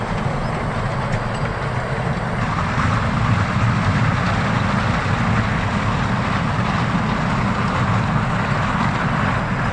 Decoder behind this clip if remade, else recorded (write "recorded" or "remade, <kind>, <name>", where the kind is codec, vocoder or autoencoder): recorded